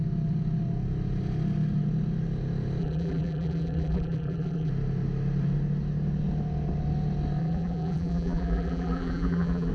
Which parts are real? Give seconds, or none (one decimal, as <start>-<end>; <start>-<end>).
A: 0.0-2.8; 4.7-7.4